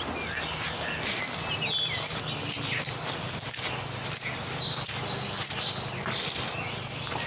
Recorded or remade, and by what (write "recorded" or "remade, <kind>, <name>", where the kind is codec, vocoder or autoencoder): recorded